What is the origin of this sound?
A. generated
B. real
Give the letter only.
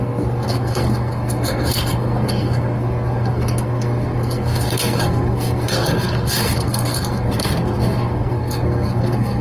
A